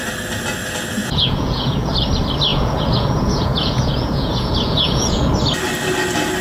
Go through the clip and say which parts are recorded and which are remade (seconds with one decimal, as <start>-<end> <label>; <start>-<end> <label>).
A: 0.0-1.0 recorded; 1.0-1.9 remade; 1.9-2.5 recorded; 2.5-5.3 remade; 5.3-6.4 recorded